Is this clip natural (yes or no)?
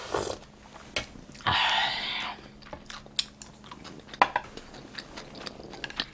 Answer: yes